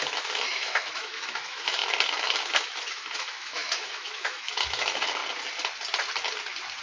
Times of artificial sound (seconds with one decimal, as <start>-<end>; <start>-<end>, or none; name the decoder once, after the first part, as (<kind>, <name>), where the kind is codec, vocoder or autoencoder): 0.0-5.2 (autoencoder, DAC-VAE)